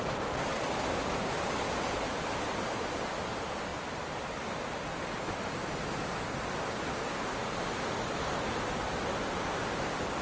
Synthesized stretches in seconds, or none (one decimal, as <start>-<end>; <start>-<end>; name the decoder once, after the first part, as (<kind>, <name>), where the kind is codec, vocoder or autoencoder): none